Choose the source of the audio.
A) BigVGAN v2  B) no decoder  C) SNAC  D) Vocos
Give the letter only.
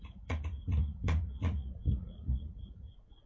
D